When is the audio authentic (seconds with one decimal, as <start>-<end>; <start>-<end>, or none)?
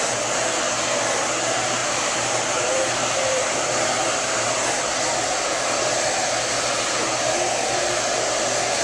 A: 0.0-1.8; 4.5-8.8